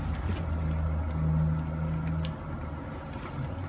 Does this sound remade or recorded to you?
recorded